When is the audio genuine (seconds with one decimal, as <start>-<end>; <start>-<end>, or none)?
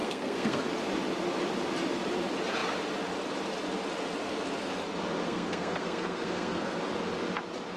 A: 0.6-5.2; 6.8-7.8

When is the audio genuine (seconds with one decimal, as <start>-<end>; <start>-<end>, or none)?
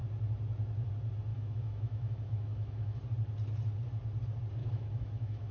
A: 0.0-1.3; 3.0-4.6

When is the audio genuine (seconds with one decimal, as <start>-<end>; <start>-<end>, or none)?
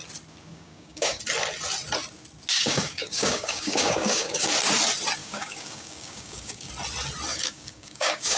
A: 0.0-0.5; 1.2-2.5; 4.5-5.2; 6.7-7.3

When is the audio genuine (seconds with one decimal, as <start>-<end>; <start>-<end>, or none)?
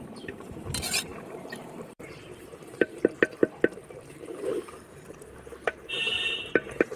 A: 3.4-3.9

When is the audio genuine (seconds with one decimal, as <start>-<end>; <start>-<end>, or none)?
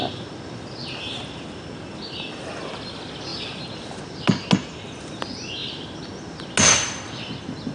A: 0.0-7.7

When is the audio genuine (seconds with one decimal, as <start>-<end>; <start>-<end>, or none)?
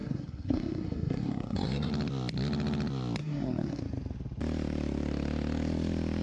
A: 1.9-3.2; 3.8-6.2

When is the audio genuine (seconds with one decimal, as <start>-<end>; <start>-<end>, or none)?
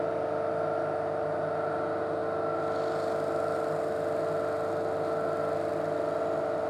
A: 0.0-6.7